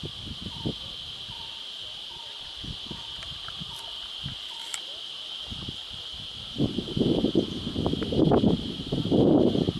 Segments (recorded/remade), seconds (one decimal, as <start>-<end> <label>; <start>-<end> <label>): 0.0-9.8 recorded

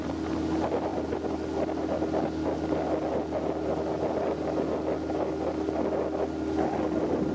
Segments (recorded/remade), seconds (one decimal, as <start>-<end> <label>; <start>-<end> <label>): 0.0-7.3 recorded